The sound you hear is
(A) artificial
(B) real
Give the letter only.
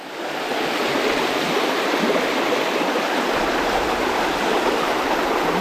B